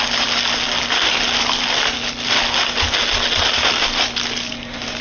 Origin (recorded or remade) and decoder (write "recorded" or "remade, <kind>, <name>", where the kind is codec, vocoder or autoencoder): recorded